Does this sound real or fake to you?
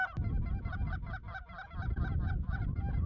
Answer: real